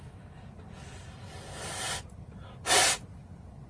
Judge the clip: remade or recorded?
recorded